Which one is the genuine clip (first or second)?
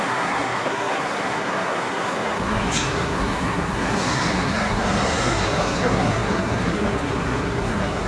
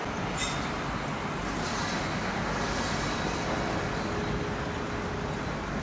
second